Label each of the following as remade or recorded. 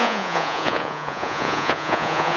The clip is remade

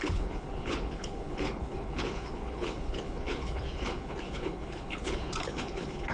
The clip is remade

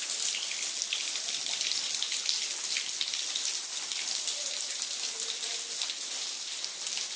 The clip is recorded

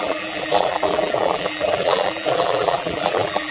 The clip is remade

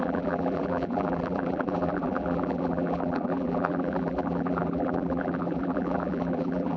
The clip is remade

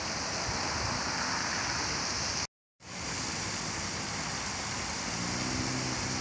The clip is recorded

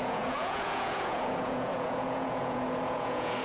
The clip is remade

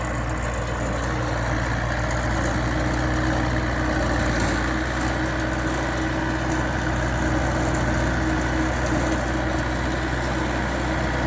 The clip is recorded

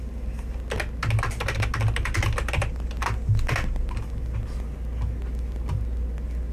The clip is recorded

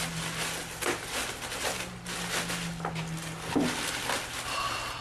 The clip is recorded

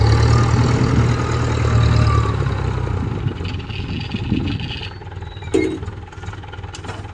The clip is recorded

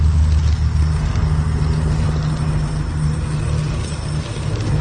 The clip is recorded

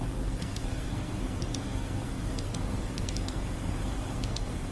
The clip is remade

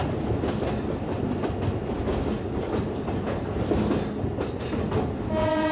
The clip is recorded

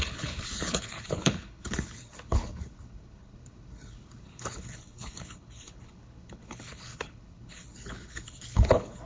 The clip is remade